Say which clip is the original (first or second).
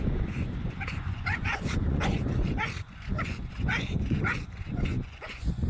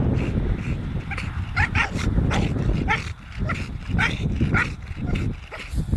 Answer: second